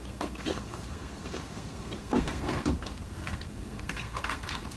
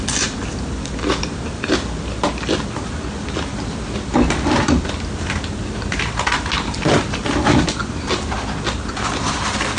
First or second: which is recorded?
second